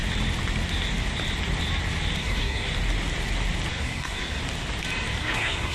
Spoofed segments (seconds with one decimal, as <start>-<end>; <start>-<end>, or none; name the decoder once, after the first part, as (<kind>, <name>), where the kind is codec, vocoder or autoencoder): 2.2-2.7 (codec, SNAC); 3.7-4.4; 5.2-5.7